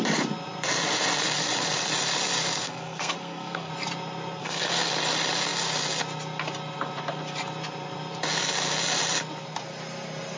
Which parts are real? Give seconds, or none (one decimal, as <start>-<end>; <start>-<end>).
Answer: 0.0-2.6; 3.7-4.4; 4.9-10.4